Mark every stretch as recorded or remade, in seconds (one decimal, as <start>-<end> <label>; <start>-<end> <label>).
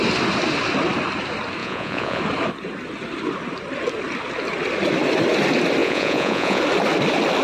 0.0-1.6 recorded; 1.6-2.2 remade; 2.2-5.8 recorded; 5.8-6.6 remade; 6.6-7.4 recorded